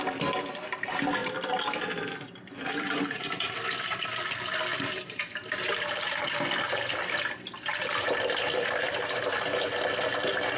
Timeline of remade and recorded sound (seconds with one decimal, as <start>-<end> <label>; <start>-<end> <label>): 0.0-1.2 recorded; 1.2-4.1 remade; 4.1-4.7 recorded; 4.7-6.2 remade; 6.2-10.6 recorded